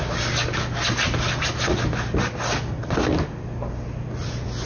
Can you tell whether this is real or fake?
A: real